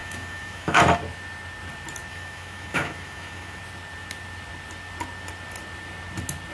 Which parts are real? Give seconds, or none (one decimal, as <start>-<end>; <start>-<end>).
0.8-2.1; 3.6-6.5